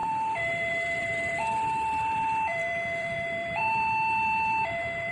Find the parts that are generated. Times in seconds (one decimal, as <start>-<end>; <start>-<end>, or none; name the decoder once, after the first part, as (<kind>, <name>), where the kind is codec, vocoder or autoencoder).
0.0-5.1 (vocoder, BigVGAN v2)